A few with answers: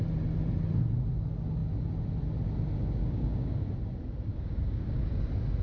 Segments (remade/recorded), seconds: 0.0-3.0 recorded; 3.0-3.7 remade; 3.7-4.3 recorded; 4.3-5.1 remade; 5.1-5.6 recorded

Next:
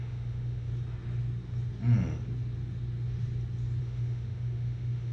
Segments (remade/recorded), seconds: 0.0-0.7 remade; 0.7-3.8 recorded; 3.8-5.1 remade

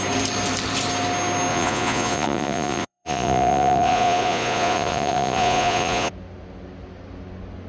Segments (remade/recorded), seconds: 0.0-1.5 recorded; 1.5-6.1 remade; 6.1-7.7 recorded

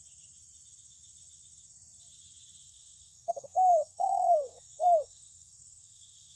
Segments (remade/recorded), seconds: 0.0-2.6 recorded; 2.6-6.4 remade

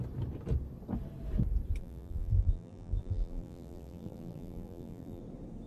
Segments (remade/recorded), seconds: 0.0-1.8 recorded; 1.8-5.2 remade; 5.2-5.7 recorded

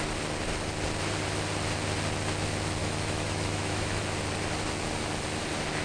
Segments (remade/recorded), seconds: 0.0-2.8 recorded; 2.8-4.0 remade; 4.0-5.8 recorded

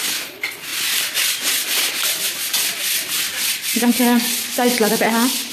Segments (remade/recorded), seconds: 0.0-4.4 recorded; 4.4-5.0 remade; 5.0-5.5 recorded

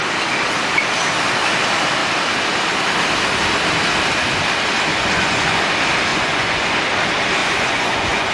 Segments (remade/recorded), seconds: 0.0-4.9 recorded; 4.9-5.6 remade; 5.6-6.1 recorded; 6.1-6.8 remade; 6.8-7.4 recorded; 7.4-8.3 remade